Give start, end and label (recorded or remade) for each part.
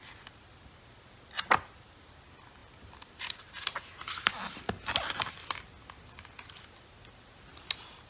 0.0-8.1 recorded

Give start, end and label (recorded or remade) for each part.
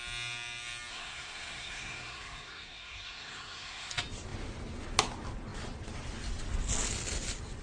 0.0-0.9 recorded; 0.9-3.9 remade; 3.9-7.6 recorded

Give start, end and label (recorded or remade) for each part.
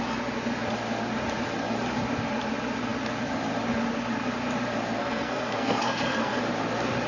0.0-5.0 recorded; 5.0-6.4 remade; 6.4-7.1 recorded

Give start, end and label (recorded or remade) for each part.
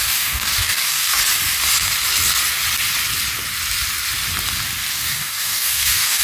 0.0-1.2 remade; 1.2-4.9 recorded; 4.9-6.2 remade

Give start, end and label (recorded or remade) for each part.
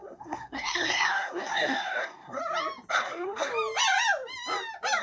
0.0-2.4 remade; 2.4-2.9 recorded; 2.9-3.5 remade; 3.5-5.0 recorded